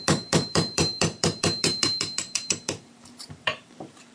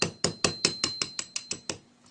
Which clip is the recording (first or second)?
second